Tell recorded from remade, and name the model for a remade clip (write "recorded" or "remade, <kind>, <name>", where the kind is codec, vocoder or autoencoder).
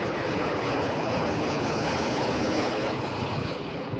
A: remade, codec, HILCodec